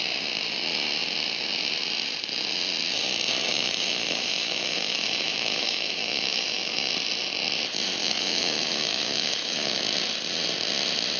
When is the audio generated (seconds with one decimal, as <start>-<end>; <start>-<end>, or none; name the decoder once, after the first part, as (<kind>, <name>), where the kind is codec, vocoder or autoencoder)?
3.5-6.9 (autoencoder, DAC-VAE); 8.0-9.8